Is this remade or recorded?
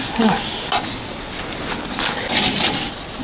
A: recorded